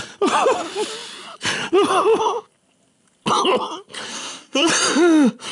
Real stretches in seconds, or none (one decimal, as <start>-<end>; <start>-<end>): 0.0-4.1; 4.7-5.5